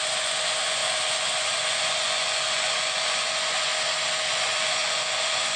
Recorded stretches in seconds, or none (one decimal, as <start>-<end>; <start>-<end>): 3.7-4.3